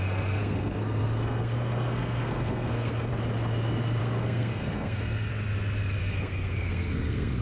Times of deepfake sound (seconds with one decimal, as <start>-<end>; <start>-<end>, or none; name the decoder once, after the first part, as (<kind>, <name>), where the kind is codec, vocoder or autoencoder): 0.0-3.1 (codec, SNAC); 4.0-5.3; 6.0-7.4